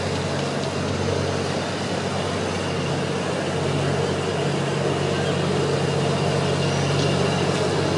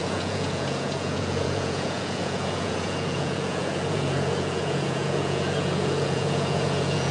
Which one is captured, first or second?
first